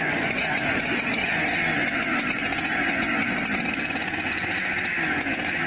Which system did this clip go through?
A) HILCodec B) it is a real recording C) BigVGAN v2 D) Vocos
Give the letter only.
D